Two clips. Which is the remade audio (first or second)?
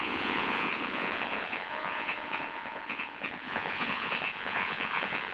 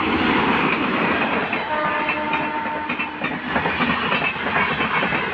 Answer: first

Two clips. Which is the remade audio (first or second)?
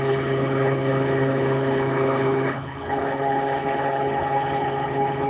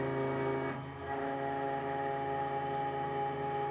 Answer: first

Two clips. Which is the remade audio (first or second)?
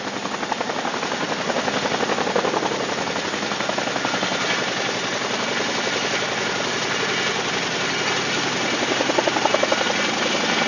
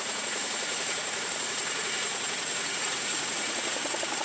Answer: second